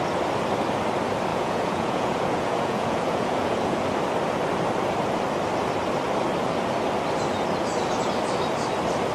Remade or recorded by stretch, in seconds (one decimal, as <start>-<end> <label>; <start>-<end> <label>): 0.0-1.3 recorded; 1.3-3.8 remade; 3.8-9.1 recorded